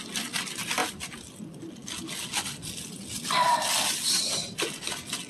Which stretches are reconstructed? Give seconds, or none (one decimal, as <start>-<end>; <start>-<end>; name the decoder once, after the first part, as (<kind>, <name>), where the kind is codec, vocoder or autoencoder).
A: none